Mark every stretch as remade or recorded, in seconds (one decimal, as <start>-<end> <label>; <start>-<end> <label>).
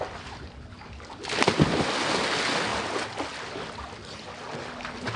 0.0-5.2 recorded